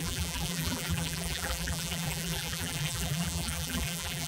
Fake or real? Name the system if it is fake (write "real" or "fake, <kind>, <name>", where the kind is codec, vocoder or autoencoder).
fake, vocoder, BigVGAN v2